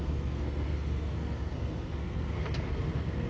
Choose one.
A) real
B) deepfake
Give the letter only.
B